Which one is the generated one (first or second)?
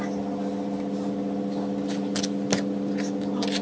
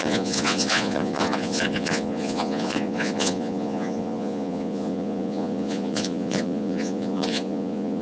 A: second